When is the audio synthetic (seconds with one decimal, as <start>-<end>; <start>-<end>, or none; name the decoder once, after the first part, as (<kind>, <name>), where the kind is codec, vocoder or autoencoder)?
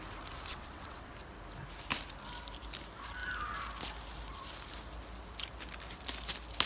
0.5-1.1 (vocoder, WaveNeXt)